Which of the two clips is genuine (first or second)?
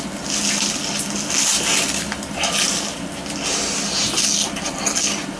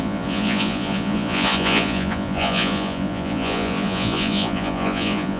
first